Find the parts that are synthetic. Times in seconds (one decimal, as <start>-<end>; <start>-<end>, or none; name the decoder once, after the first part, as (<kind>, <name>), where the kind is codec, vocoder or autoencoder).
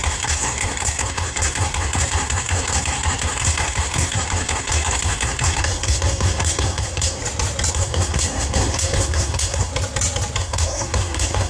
0.0-7.2 (codec, SNAC); 7.7-9.7; 10.4-11.5